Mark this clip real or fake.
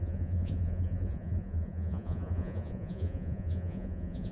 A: fake